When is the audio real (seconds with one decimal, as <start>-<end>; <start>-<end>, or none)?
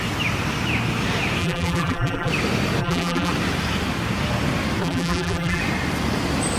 0.0-1.4; 2.3-2.8; 3.3-4.8; 5.6-6.6